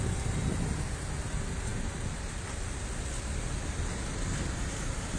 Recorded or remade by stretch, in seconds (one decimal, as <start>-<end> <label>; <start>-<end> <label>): 0.0-5.2 recorded